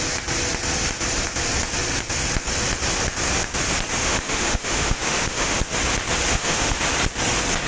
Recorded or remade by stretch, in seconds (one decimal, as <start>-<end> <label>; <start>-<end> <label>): 0.0-4.0 recorded; 4.0-5.6 remade; 5.6-6.3 recorded; 6.3-6.8 remade; 6.8-7.7 recorded